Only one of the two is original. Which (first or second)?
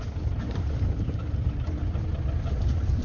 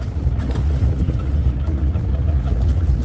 first